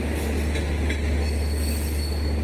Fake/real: real